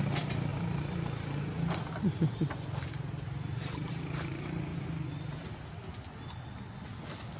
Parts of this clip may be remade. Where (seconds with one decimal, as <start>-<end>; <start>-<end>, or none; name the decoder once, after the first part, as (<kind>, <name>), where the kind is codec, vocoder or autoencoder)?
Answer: 0.0-4.7 (vocoder, BigVGAN v2)